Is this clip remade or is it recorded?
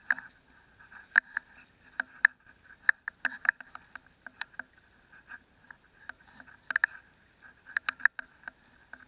recorded